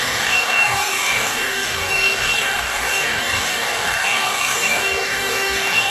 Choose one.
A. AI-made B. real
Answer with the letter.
A